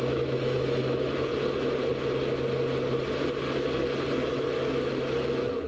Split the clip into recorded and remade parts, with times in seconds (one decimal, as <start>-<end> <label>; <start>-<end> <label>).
0.0-1.3 remade; 1.3-4.1 recorded; 4.1-5.7 remade